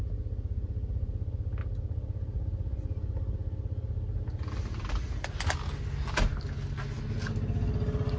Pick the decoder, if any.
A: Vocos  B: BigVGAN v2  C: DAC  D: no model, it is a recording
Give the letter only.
D